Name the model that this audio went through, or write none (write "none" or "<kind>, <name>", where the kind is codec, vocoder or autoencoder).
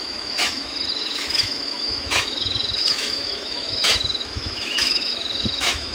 autoencoder, DAC-VAE